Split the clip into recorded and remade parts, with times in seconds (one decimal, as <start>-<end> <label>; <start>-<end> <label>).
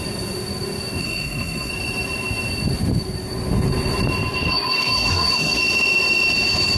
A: 0.0-1.0 recorded; 1.0-1.7 remade; 1.7-4.5 recorded; 4.5-5.6 remade; 5.6-6.8 recorded